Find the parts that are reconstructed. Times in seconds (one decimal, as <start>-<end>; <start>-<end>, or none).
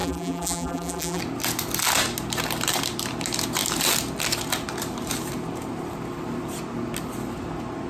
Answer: 0.0-1.2